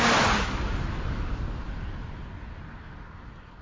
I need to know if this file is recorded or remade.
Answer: recorded